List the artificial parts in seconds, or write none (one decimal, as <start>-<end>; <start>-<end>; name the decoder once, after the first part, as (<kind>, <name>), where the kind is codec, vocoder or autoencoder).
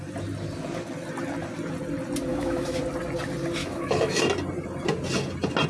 2.3-2.8 (autoencoder, DAC-VAE); 3.6-4.2